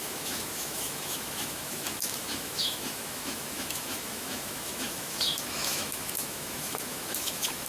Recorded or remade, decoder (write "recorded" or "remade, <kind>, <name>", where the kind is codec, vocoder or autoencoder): remade, autoencoder, DAC-VAE